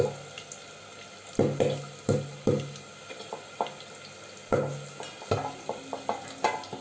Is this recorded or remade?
recorded